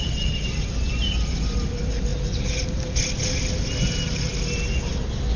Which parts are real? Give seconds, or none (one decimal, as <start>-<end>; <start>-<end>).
0.0-5.4